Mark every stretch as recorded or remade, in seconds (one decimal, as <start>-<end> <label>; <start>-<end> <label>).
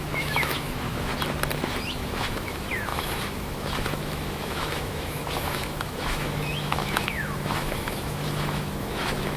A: 0.0-1.1 remade; 1.1-1.8 recorded; 1.8-9.4 remade